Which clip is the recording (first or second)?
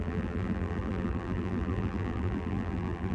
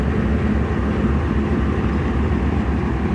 second